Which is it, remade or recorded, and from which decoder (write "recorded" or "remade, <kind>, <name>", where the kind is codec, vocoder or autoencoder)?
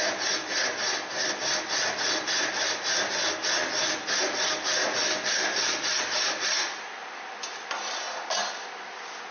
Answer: recorded